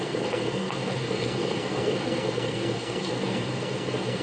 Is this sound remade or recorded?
remade